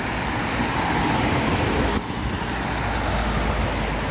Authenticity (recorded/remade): recorded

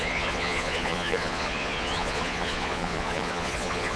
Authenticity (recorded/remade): remade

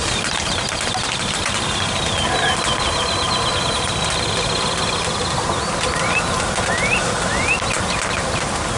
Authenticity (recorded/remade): recorded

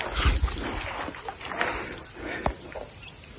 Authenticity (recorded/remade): recorded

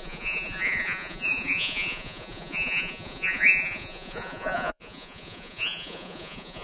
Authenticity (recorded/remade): remade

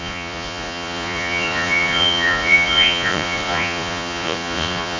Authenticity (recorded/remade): remade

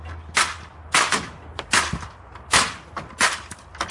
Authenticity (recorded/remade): recorded